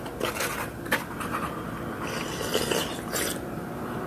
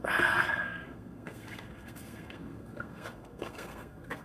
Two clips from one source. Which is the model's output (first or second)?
second